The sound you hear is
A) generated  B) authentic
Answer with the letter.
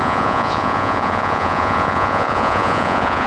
A